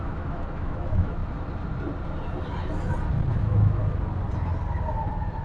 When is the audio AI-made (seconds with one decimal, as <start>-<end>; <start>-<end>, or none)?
0.0-1.2; 3.3-3.8